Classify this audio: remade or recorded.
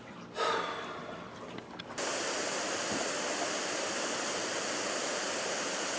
recorded